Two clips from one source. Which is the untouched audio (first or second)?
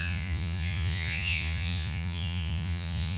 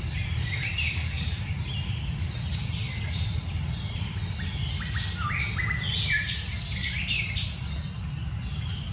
second